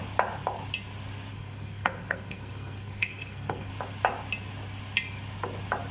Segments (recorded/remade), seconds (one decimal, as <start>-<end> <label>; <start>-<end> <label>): 0.0-1.3 recorded; 1.3-3.7 remade; 3.7-5.9 recorded